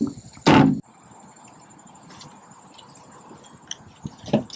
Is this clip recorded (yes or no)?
yes